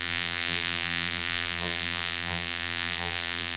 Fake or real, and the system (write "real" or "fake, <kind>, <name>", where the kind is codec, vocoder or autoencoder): fake, vocoder, BigVGAN v2